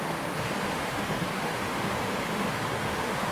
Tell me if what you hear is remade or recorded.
remade